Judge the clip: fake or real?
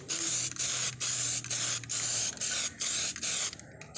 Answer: real